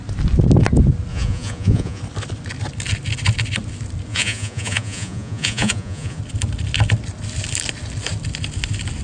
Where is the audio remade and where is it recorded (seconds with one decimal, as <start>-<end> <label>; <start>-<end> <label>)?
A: 0.0-1.1 recorded; 1.1-2.0 remade; 2.0-4.1 recorded; 4.1-6.2 remade; 6.2-9.0 recorded